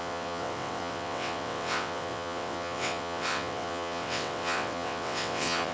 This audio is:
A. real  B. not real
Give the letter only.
B